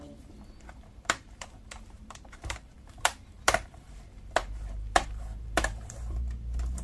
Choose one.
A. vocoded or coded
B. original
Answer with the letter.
A